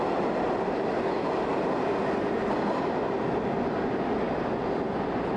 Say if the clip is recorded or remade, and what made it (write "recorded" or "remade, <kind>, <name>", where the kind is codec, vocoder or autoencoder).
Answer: recorded